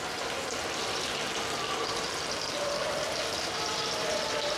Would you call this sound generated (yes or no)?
no